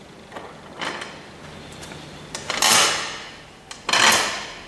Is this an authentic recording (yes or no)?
yes